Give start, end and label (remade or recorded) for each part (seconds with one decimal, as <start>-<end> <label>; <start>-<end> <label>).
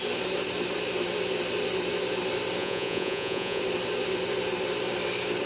0.0-2.6 recorded; 2.6-3.6 remade; 3.6-5.5 recorded